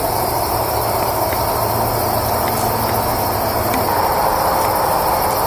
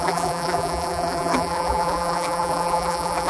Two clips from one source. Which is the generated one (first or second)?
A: second